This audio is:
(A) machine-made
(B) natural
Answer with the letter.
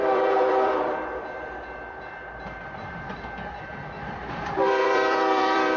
A